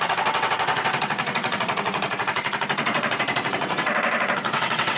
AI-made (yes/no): yes